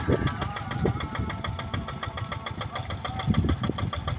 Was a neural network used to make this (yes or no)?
no